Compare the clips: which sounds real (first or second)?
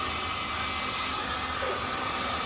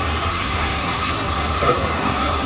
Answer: first